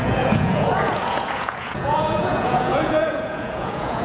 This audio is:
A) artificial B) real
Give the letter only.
A